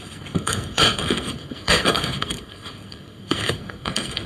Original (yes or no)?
no